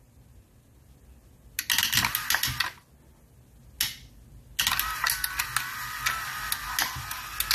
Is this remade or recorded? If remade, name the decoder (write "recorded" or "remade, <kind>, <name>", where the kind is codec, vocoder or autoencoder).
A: recorded